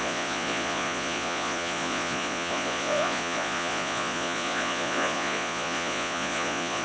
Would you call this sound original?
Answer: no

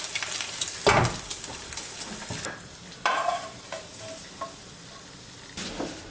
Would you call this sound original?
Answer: yes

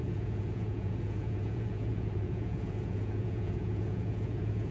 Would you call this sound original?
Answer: no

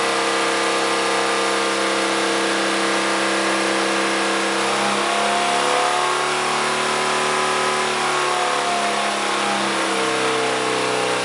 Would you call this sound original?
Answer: yes